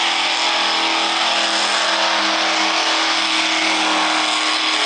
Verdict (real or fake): real